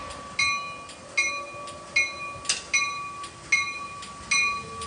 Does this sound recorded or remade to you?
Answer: recorded